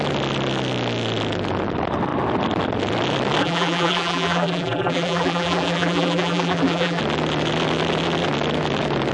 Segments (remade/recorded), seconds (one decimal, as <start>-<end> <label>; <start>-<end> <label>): 0.0-3.4 recorded; 3.4-7.0 remade; 7.0-9.1 recorded